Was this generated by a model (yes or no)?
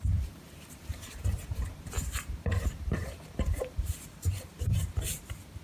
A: yes